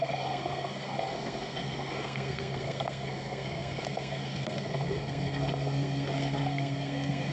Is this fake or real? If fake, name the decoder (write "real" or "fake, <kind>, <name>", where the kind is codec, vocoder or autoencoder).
fake, codec, SNAC